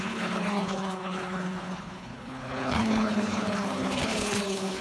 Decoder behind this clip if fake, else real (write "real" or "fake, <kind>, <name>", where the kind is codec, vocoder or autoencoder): fake, codec, HILCodec